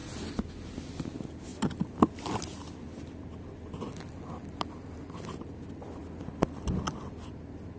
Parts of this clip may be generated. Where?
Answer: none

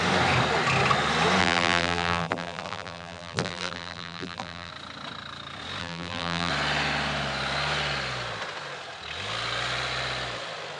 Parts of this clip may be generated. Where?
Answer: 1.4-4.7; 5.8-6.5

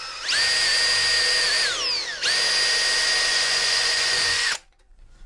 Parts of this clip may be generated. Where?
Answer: 3.3-5.3